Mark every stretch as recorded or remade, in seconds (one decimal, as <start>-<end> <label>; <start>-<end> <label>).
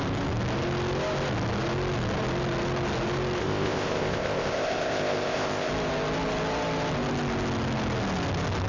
0.0-3.4 recorded; 3.4-5.7 remade; 5.7-8.7 recorded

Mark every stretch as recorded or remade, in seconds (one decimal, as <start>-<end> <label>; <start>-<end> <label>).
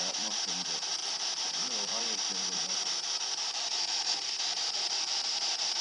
0.0-5.8 recorded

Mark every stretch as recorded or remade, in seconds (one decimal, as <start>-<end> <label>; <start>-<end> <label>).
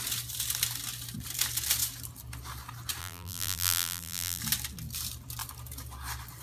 0.0-3.0 recorded; 3.0-4.4 remade; 4.4-6.4 recorded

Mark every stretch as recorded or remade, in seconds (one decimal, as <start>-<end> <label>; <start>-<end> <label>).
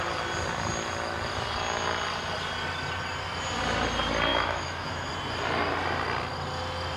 0.0-4.3 recorded; 4.3-5.1 remade; 5.1-7.0 recorded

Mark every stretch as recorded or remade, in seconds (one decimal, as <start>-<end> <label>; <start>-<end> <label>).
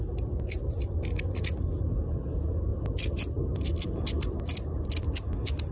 0.0-5.7 recorded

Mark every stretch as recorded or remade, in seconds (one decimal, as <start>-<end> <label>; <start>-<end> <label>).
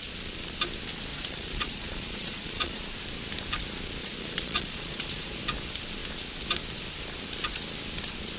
0.0-1.1 recorded; 1.1-2.8 remade; 2.8-4.0 recorded; 4.0-5.4 remade; 5.4-8.4 recorded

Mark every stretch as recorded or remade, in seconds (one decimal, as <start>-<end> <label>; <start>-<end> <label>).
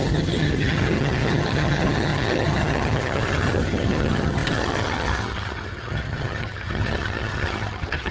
0.0-8.1 remade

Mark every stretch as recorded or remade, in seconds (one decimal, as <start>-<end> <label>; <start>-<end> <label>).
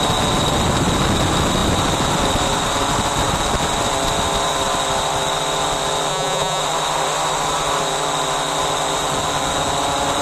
0.0-6.1 recorded; 6.1-6.6 remade; 6.6-10.2 recorded